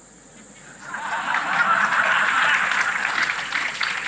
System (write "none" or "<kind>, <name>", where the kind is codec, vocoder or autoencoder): vocoder, BigVGAN v2